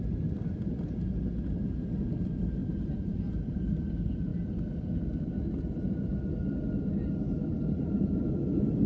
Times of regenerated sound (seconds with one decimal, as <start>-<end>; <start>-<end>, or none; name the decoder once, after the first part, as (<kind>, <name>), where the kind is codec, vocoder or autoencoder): 2.6-3.9 (vocoder, BigVGAN v2)